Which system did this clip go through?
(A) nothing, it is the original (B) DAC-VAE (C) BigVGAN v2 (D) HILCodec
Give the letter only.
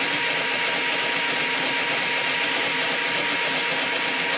A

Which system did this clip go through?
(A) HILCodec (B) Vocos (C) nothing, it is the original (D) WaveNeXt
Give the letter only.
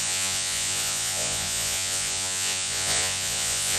B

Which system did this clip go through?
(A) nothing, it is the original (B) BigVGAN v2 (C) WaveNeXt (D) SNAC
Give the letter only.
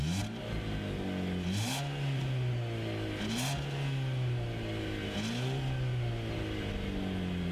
A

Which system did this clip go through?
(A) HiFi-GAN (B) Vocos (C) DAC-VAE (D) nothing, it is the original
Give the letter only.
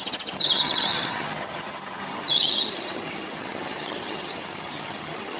A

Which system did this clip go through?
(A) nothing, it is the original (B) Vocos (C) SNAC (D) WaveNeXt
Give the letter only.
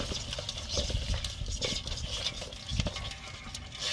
A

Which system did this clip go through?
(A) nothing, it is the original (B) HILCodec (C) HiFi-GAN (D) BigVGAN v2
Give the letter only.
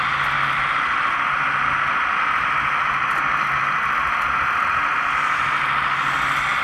A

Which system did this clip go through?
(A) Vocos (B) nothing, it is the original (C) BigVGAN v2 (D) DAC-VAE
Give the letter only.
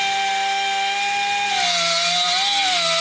B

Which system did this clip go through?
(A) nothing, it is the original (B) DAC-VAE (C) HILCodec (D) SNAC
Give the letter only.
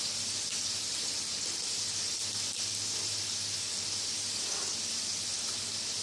A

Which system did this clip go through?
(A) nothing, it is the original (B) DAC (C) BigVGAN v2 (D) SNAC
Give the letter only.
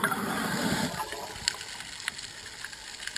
A